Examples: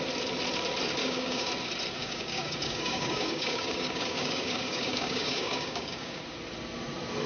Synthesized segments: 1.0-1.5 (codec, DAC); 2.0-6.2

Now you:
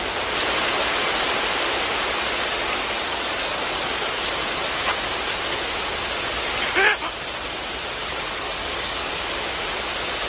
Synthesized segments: 3.1-4.3 (codec, DAC); 8.0-9.2

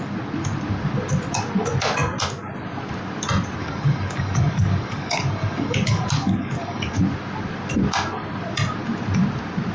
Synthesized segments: 3.6-7.0 (codec, DAC)

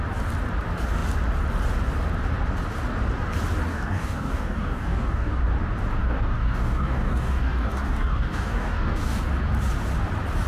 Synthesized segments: 3.7-5.4 (codec, DAC); 6.0-9.2